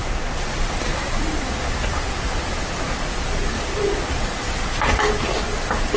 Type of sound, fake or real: real